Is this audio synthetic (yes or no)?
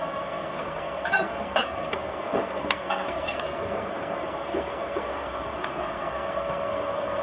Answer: yes